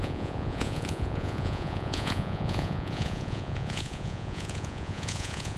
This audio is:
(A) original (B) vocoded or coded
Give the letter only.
B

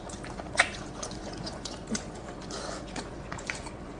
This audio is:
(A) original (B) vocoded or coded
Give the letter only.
B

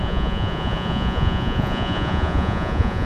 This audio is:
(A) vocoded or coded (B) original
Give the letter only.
A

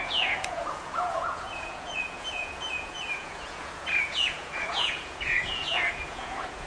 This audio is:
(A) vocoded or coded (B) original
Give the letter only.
A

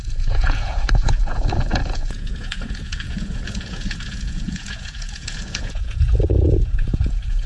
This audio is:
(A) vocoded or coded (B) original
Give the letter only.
A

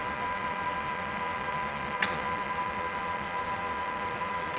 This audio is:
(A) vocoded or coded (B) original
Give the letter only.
A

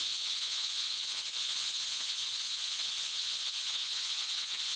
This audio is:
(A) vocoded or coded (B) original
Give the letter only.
A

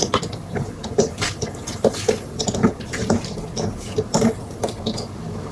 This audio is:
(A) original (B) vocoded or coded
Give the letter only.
A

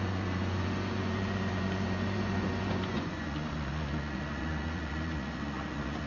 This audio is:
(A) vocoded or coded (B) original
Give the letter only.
A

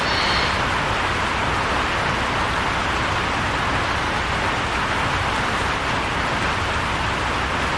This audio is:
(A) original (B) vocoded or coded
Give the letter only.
A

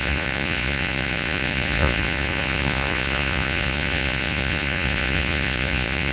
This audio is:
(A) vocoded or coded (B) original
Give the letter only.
A